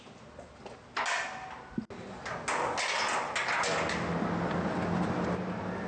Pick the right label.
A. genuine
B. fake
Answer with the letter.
A